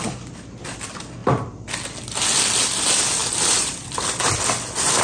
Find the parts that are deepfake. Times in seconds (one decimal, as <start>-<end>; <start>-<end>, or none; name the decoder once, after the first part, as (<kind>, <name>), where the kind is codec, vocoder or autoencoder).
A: 3.2-4.1 (vocoder, BigVGAN v2)